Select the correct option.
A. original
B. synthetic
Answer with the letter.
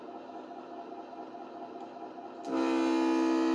A